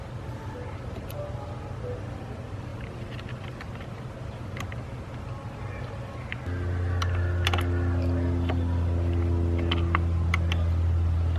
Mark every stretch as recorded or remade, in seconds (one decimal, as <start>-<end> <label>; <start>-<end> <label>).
0.0-11.4 recorded